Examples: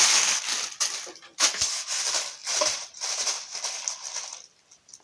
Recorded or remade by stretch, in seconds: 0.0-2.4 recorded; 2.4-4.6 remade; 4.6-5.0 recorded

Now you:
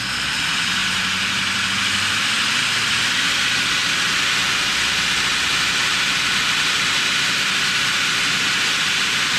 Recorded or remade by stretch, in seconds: 0.0-9.4 recorded

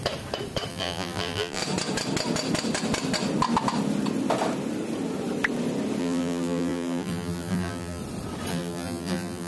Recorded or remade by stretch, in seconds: 0.0-0.7 recorded; 0.7-1.6 remade; 1.6-6.0 recorded; 6.0-8.0 remade; 8.0-8.5 recorded; 8.5-9.5 remade

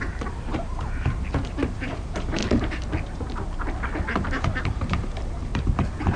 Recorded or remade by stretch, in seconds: 0.0-2.4 remade; 2.4-4.6 recorded; 4.6-6.2 remade

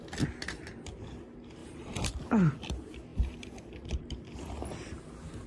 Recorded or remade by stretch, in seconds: 0.0-1.6 recorded; 1.6-2.1 remade; 2.1-3.1 recorded; 3.1-4.0 remade; 4.0-5.5 recorded

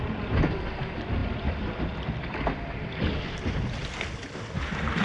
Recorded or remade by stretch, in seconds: 0.0-1.2 recorded; 1.2-3.0 remade; 3.0-5.0 recorded

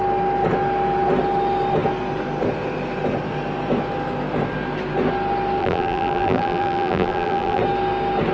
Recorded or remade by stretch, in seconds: 0.0-5.6 recorded; 5.6-7.6 remade; 7.6-8.3 recorded